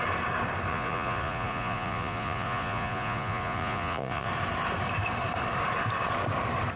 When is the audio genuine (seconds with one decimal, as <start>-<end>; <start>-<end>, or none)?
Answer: 0.0-0.7; 4.3-6.8